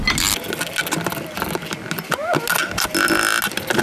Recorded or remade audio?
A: recorded